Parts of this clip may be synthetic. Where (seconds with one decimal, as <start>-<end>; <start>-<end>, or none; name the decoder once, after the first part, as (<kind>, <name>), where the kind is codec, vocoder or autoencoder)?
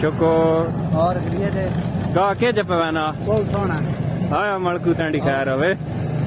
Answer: none